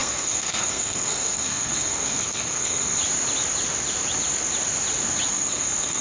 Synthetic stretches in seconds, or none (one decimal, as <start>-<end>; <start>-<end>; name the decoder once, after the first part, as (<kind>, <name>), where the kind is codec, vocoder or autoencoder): 0.0-3.0 (codec, SNAC); 5.3-6.0

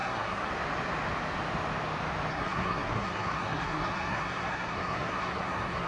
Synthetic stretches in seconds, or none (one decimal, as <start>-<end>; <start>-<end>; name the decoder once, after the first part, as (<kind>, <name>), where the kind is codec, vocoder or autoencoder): 0.0-0.5 (codec, SNAC); 2.3-5.9

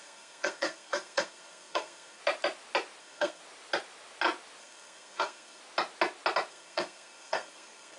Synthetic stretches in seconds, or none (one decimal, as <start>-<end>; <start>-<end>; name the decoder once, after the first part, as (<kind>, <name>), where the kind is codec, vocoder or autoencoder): 0.0-2.2 (codec, SNAC); 3.0-3.4; 4.6-5.6; 6.5-8.0

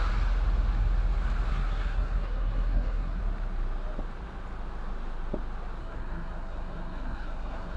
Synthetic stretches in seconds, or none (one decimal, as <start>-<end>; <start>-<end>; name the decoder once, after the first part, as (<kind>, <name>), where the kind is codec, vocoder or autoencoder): 1.5-3.2 (codec, SNAC); 5.8-7.8

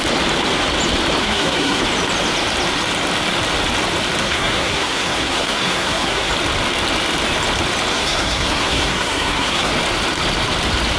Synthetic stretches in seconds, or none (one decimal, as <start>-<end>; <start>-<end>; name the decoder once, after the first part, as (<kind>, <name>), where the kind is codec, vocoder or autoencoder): 1.2-1.8 (codec, SNAC); 4.2-6.3; 7.9-9.7

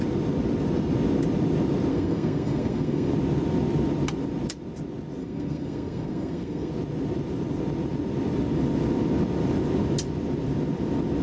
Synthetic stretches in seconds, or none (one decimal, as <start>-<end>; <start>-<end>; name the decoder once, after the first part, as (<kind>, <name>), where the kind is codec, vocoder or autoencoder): 1.9-3.1 (codec, SNAC); 5.2-6.7